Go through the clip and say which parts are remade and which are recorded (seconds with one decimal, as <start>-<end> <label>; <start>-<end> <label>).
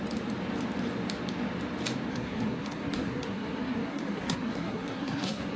0.0-2.1 recorded; 2.1-5.6 remade